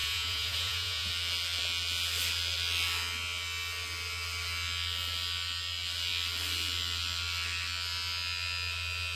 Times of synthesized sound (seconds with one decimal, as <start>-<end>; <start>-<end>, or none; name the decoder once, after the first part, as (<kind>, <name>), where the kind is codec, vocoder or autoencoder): 0.0-1.1 (vocoder, Vocos)